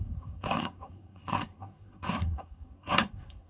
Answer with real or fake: fake